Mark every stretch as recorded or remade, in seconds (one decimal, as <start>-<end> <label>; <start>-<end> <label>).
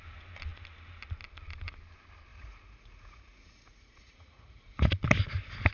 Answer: 0.0-2.3 recorded; 2.3-4.9 remade; 4.9-5.7 recorded